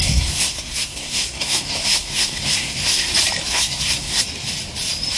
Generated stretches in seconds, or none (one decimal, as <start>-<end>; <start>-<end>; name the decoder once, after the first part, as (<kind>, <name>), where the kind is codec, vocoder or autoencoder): 0.0-3.1 (codec, SNAC); 3.5-4.2